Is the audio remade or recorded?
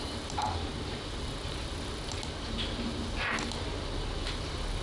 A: recorded